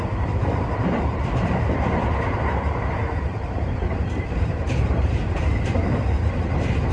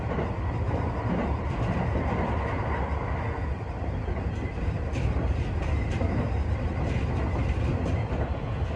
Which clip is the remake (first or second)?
first